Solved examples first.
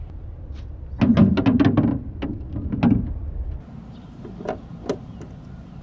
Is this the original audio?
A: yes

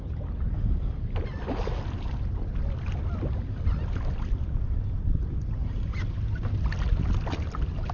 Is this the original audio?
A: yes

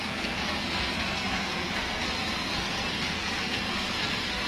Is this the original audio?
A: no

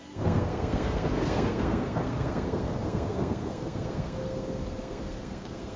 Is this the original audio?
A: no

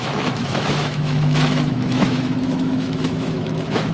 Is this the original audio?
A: no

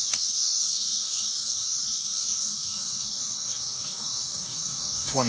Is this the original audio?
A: no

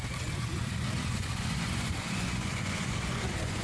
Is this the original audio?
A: no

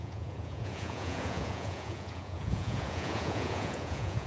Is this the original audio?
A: no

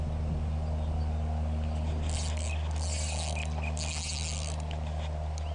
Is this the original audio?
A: yes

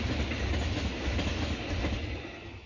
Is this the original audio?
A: yes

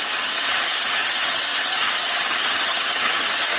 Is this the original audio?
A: no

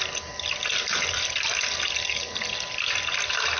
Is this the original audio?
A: yes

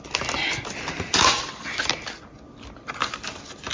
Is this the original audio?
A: yes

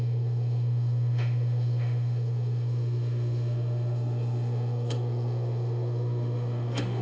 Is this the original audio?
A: no